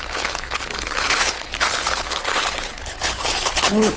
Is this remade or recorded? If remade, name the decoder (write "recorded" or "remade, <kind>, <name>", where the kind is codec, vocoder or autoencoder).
remade, codec, HILCodec